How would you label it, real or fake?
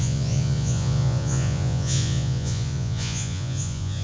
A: fake